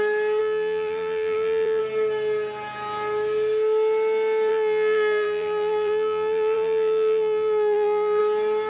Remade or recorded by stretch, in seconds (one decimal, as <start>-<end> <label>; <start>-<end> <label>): 0.0-0.4 recorded; 0.4-1.8 remade; 1.8-4.5 recorded; 4.5-8.2 remade; 8.2-8.7 recorded